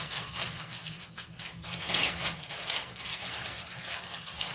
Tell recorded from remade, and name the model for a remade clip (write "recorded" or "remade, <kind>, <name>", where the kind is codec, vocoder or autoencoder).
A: remade, codec, SNAC